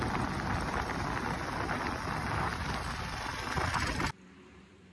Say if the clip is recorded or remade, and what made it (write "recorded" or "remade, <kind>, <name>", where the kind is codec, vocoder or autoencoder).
recorded